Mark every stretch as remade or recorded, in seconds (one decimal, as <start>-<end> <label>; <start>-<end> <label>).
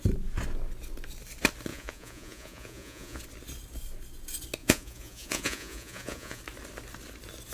0.0-1.7 recorded; 1.7-3.2 remade; 3.2-4.6 recorded; 4.6-6.4 remade; 6.4-7.5 recorded